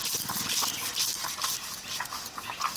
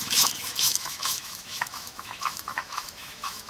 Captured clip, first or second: first